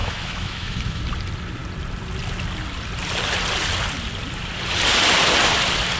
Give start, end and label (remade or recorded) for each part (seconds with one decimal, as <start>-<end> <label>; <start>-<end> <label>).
0.0-1.0 remade; 1.0-6.0 recorded